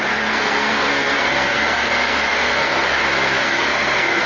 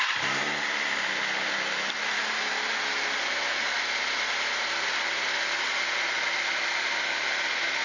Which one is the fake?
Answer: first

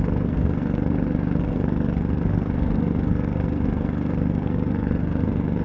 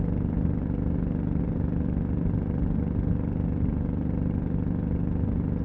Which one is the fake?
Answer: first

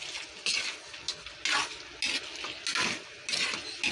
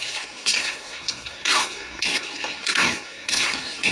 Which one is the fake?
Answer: second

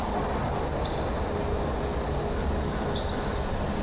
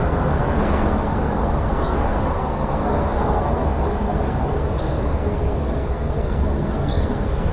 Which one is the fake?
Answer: second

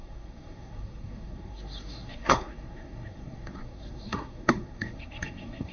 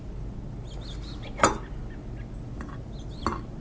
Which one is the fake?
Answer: first